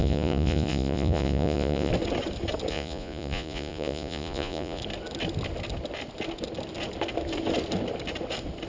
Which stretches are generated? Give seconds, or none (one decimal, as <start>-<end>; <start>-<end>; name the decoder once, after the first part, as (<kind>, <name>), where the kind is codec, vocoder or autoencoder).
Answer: 0.0-1.9 (vocoder, Vocos); 2.7-4.8